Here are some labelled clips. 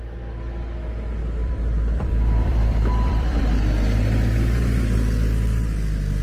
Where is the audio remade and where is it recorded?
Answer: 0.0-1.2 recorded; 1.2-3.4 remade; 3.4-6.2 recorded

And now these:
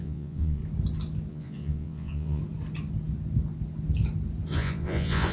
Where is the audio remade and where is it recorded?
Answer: 0.0-0.6 remade; 0.6-1.3 recorded; 1.3-2.4 remade; 2.4-4.5 recorded; 4.5-5.3 remade

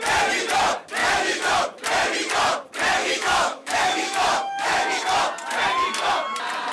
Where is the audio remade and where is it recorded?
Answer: 0.0-1.0 recorded; 1.0-1.5 remade; 1.5-3.0 recorded; 3.0-5.0 remade; 5.0-6.7 recorded

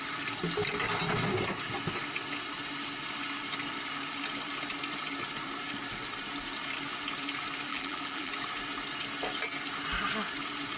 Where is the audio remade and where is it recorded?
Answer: 0.0-7.7 recorded; 7.7-8.3 remade; 8.3-10.8 recorded